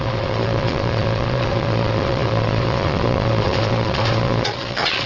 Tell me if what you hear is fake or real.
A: fake